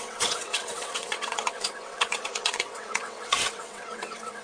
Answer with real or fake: fake